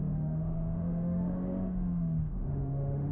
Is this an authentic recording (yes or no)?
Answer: no